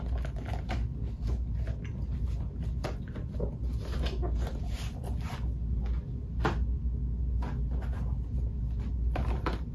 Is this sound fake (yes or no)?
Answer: no